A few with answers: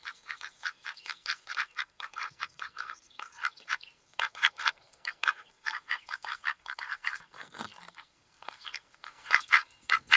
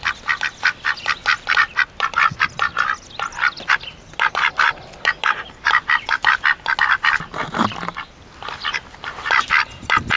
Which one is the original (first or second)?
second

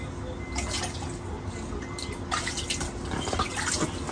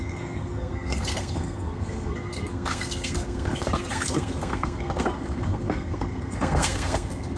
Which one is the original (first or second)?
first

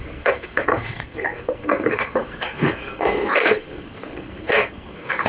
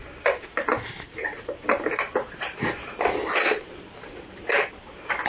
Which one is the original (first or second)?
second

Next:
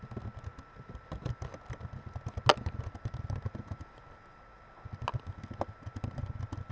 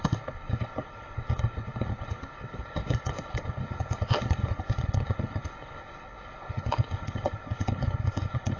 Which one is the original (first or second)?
first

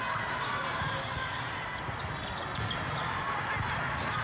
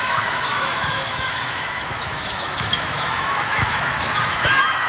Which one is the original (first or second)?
first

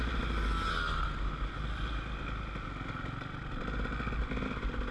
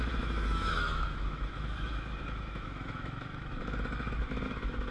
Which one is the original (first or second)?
first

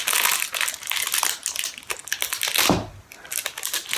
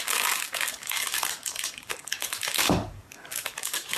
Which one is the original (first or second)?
first